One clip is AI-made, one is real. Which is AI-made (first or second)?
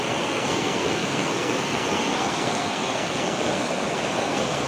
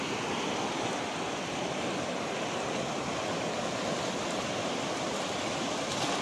first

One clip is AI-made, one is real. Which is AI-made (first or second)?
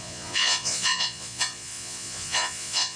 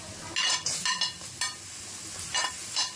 first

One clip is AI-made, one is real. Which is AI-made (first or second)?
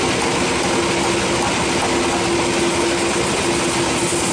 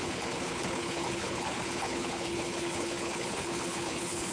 second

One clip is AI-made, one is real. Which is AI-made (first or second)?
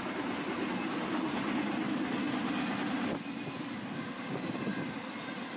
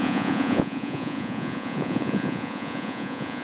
second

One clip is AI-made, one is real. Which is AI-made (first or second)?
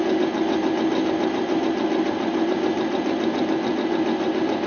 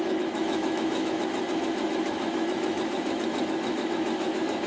second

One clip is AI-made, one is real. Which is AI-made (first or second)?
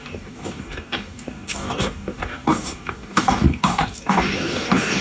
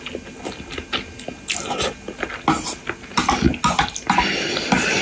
first